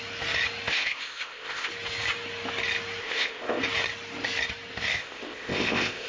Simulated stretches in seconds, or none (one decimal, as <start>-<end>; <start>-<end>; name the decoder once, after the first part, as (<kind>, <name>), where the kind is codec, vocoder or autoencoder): 0.7-1.7 (codec, ZipCodec); 3.0-3.6; 4.9-6.1